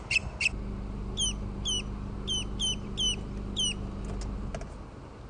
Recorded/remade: recorded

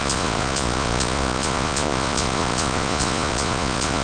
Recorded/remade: remade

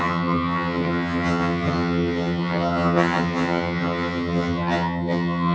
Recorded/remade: remade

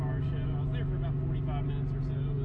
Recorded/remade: recorded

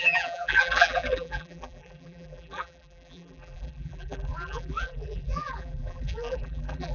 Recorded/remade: remade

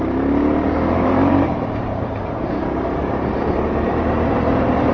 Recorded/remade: remade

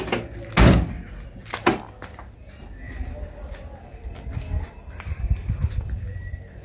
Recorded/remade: recorded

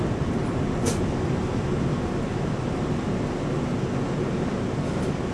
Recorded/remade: recorded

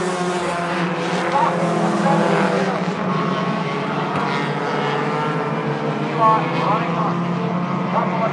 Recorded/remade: recorded